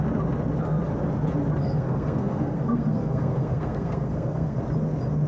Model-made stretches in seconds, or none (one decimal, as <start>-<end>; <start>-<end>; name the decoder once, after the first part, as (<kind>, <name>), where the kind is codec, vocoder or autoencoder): 1.6-4.6 (codec, SNAC)